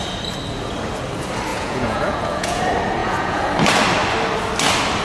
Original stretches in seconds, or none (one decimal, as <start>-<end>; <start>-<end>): 0.0-1.5; 2.6-3.0; 3.5-5.0